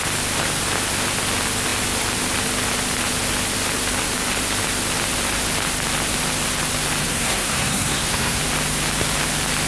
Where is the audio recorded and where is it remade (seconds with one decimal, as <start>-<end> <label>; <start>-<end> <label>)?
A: 0.0-7.0 recorded; 7.0-8.4 remade; 8.4-9.7 recorded